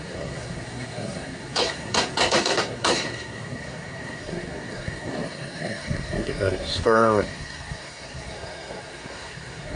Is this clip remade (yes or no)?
yes